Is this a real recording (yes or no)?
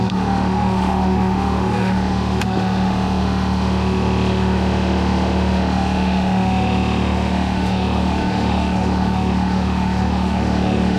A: no